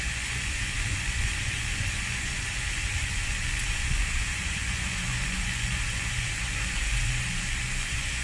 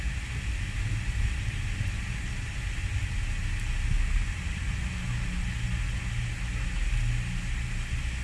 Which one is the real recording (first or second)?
second